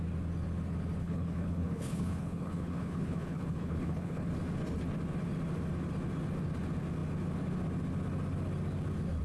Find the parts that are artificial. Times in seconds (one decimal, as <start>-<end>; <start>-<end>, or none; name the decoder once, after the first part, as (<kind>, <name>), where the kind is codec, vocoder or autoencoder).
1.0-4.3 (codec, HILCodec)